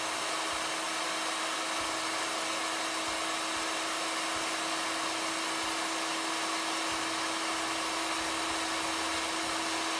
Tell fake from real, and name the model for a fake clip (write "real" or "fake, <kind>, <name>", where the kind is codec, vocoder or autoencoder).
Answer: real